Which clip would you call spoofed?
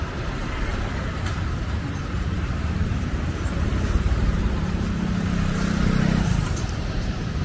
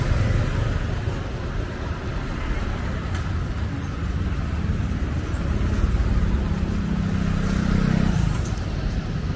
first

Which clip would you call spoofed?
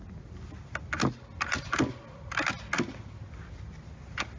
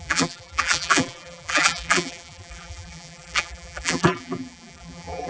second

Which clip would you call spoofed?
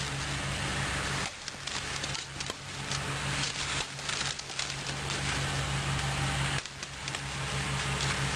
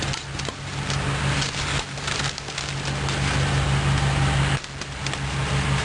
first